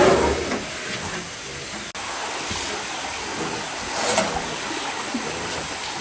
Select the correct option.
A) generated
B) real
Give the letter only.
B